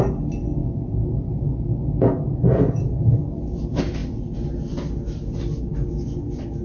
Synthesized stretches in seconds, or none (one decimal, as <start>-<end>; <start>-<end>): 0.6-3.3